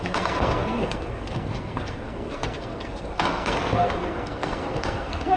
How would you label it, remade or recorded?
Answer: remade